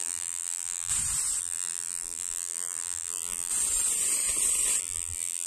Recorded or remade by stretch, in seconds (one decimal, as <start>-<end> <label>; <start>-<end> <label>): 0.0-0.9 remade; 0.9-1.4 recorded; 1.4-3.5 remade; 3.5-4.8 recorded; 4.8-5.5 remade